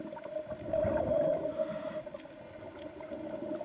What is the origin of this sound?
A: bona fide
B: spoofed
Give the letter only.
A